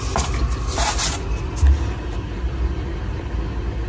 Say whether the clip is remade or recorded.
recorded